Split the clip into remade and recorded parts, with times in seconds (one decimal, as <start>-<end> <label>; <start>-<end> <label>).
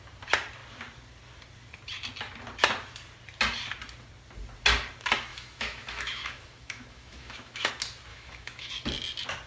0.0-5.3 recorded; 5.3-7.7 remade; 7.7-8.1 recorded; 8.1-8.7 remade; 8.7-9.5 recorded